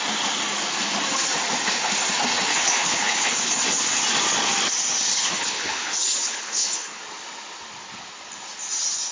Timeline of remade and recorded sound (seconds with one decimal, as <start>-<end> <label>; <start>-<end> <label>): 0.0-2.5 recorded; 2.5-3.5 remade; 3.5-5.1 recorded; 5.1-7.0 remade; 7.0-9.1 recorded